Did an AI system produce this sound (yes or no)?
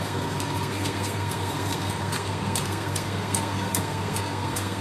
yes